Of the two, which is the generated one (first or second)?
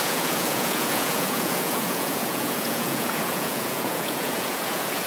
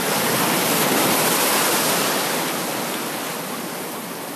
first